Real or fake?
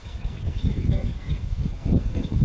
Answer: fake